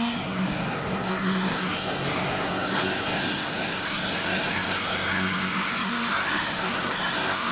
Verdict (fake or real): fake